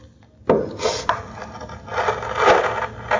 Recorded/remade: recorded